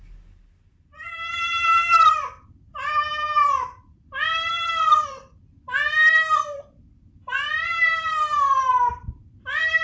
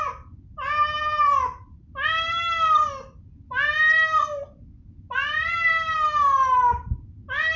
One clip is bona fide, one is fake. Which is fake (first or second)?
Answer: first